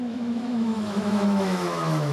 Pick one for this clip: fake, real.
fake